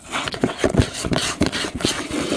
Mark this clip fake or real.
fake